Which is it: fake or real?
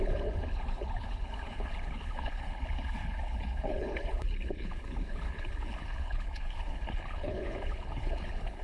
fake